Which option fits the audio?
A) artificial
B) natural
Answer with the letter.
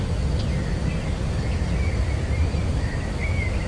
B